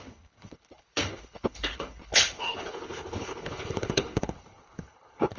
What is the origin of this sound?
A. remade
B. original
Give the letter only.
A